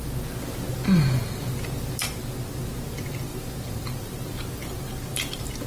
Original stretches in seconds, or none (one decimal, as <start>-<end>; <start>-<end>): 0.0-5.7